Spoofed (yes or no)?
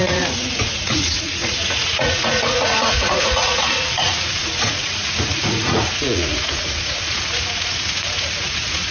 yes